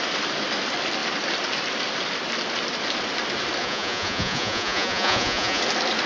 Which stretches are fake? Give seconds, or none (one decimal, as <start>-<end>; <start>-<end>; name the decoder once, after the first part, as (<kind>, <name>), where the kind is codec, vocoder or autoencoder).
3.6-5.6 (vocoder, Vocos)